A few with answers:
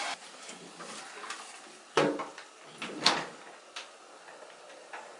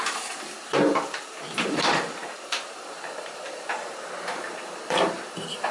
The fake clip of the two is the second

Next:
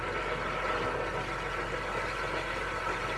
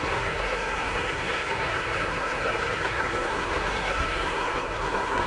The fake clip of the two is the second